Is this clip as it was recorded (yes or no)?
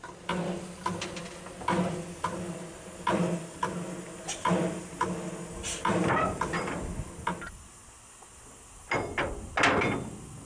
yes